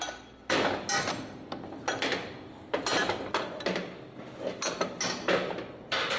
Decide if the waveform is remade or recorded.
recorded